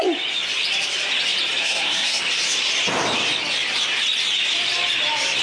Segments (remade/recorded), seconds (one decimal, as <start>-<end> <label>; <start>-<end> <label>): 0.0-1.6 recorded; 1.6-2.2 remade; 2.2-5.4 recorded